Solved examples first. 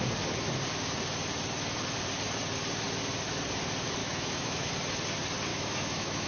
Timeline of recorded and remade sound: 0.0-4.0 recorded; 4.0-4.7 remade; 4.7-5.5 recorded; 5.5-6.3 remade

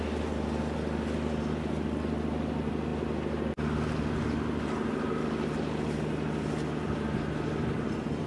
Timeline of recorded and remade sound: 0.0-8.3 recorded

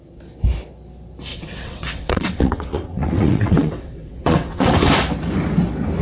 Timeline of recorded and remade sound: 0.0-1.3 recorded; 1.3-4.9 remade; 4.9-6.0 recorded

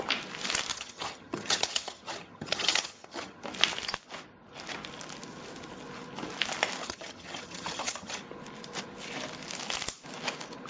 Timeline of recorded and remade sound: 0.0-0.7 recorded; 0.7-3.4 remade; 3.4-6.8 recorded; 6.8-8.2 remade; 8.2-10.7 recorded

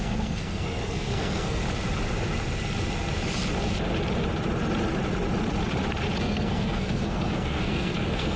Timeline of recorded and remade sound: 0.0-1.6 remade; 1.6-6.2 recorded; 6.2-8.4 remade

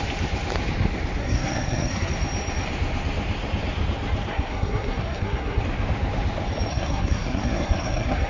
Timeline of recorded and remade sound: 0.0-1.2 recorded; 1.2-2.1 remade; 2.1-4.3 recorded; 4.3-5.6 remade; 5.6-6.7 recorded; 6.7-8.3 remade

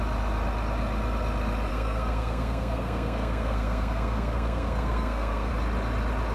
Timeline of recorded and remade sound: 0.0-1.7 recorded; 1.7-5.5 remade; 5.5-6.3 recorded

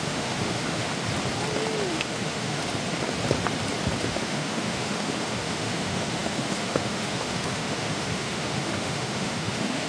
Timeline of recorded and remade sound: 0.0-0.9 remade; 0.9-1.9 recorded; 1.9-2.6 remade; 2.6-4.0 recorded; 4.0-9.9 remade